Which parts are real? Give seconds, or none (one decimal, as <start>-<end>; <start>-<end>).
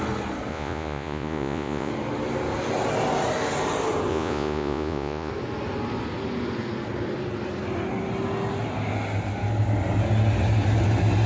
0.0-0.5; 1.9-4.1; 5.3-11.3